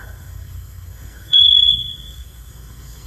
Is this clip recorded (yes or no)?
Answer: no